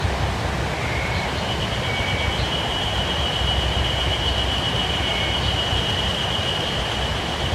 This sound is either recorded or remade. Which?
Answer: recorded